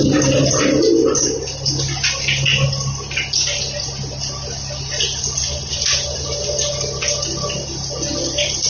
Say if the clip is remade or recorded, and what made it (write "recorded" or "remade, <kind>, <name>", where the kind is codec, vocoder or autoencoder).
recorded